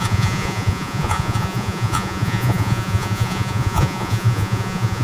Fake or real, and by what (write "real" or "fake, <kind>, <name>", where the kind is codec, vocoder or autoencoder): fake, vocoder, Vocos